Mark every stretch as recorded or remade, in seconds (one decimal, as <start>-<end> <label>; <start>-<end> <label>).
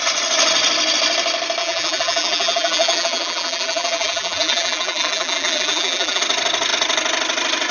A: 0.0-1.6 recorded; 1.6-6.2 remade; 6.2-7.7 recorded